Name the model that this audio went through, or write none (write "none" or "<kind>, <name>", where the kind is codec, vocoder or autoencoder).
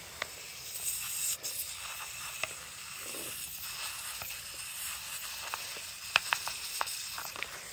none